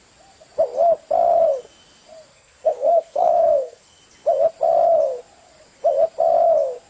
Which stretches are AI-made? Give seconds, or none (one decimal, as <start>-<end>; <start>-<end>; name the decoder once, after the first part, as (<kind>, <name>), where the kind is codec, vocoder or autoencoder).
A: 2.3-4.0 (codec, SNAC)